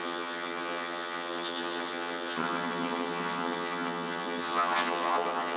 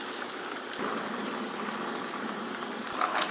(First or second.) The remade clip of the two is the first